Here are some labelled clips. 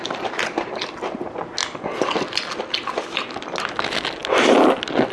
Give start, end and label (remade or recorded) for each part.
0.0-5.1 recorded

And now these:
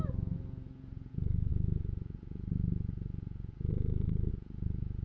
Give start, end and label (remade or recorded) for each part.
0.0-5.0 remade